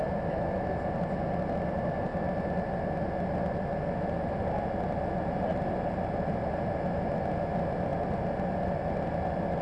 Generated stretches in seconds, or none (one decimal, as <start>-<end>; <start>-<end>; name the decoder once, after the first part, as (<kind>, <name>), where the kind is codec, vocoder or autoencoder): none

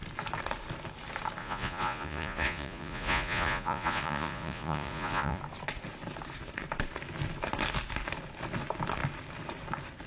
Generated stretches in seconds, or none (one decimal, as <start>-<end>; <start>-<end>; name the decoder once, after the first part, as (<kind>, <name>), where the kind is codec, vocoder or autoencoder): 1.4-5.4 (vocoder, Vocos)

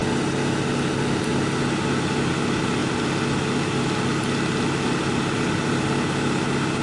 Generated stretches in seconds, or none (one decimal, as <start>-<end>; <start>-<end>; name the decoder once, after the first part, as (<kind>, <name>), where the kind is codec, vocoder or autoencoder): none